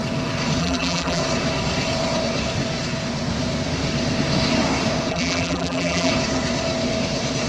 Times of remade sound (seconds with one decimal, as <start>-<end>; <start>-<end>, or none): 0.6-1.2; 5.1-6.1